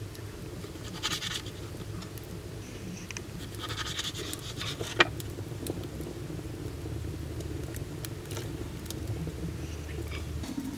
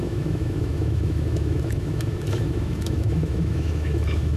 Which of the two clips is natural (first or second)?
first